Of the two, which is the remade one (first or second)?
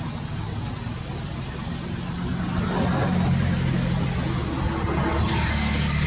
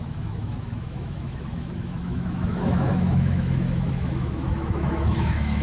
second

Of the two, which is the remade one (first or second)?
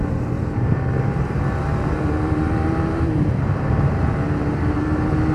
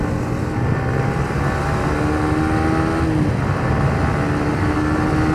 first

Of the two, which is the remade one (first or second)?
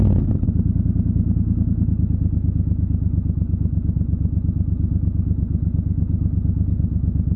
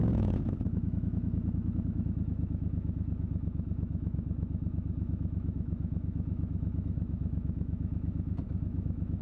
second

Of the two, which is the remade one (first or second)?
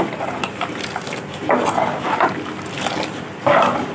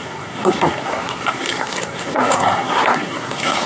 second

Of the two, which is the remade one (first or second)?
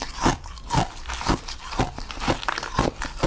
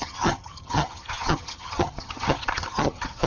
second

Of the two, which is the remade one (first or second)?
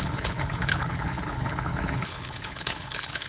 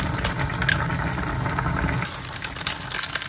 first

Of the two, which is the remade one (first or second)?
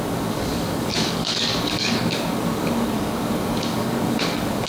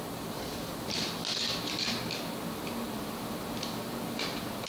first